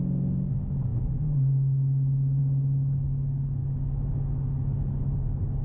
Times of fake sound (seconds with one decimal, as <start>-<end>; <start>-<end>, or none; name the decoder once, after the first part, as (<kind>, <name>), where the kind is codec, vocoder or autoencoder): 3.6-5.1 (autoencoder, DAC-VAE)